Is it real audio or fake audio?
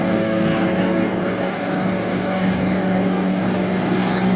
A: fake